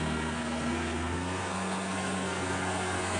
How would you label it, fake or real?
fake